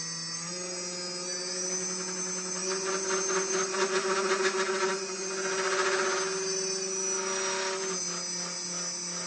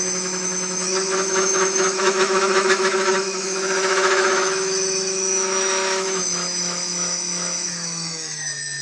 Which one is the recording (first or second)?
first